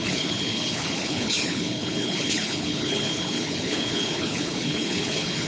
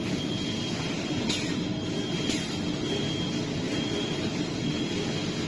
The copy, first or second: first